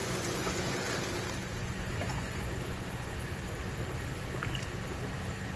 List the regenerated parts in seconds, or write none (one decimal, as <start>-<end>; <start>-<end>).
0.0-0.7; 1.4-3.3